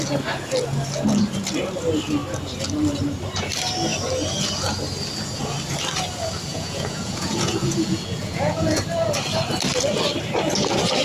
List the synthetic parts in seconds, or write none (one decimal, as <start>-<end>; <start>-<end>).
6.5-8.8